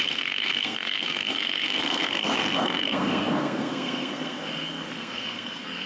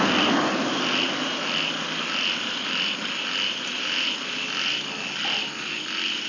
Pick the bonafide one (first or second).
second